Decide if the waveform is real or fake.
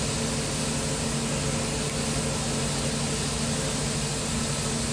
real